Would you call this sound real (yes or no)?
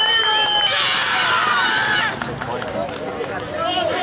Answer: yes